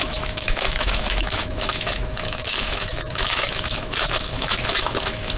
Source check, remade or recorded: remade